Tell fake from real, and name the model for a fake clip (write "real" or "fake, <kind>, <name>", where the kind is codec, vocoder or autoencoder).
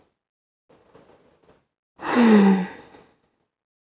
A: real